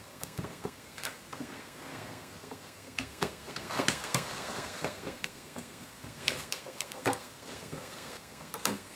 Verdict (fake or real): fake